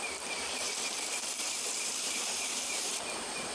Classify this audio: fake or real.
fake